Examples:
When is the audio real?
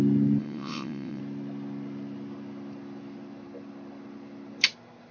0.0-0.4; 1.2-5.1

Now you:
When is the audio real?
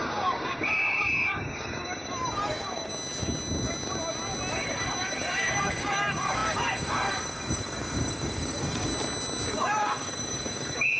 2.9-4.5; 8.9-9.5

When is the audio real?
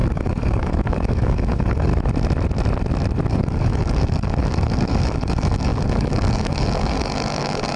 1.9-3.3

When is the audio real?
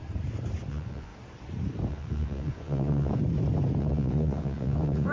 0.0-0.7; 1.1-1.9; 3.2-3.8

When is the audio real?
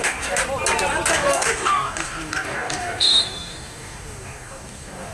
0.4-1.1